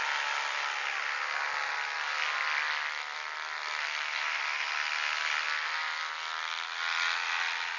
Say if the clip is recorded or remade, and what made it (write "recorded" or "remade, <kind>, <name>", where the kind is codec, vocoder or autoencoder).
recorded